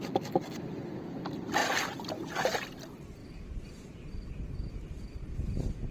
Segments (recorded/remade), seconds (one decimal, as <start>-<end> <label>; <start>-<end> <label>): 0.0-1.6 recorded; 1.6-2.1 remade; 2.1-3.2 recorded; 3.2-3.7 remade; 3.7-5.9 recorded